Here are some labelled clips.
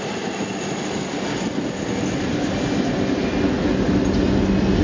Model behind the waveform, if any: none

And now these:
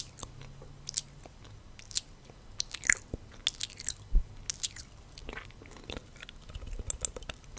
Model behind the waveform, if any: none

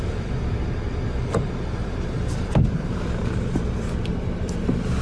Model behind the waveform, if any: vocoder, BigVGAN v2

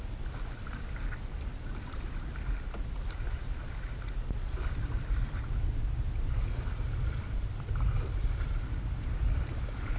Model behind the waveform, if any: none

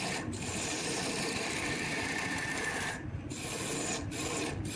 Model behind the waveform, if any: none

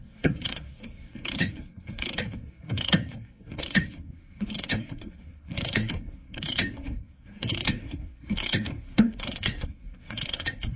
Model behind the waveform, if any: codec, SNAC